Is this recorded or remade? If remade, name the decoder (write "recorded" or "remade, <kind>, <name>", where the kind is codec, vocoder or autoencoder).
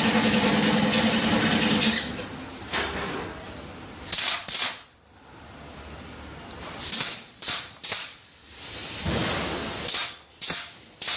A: recorded